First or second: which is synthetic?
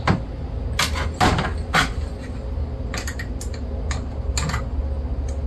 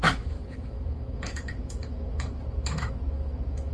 second